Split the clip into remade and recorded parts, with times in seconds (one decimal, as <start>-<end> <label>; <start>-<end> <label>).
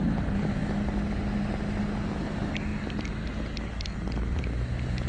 0.0-5.1 recorded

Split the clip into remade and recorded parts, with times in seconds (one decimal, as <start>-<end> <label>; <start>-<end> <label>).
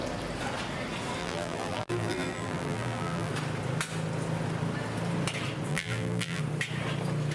0.0-1.2 recorded; 1.2-3.3 remade; 3.3-5.7 recorded; 5.7-6.4 remade; 6.4-7.3 recorded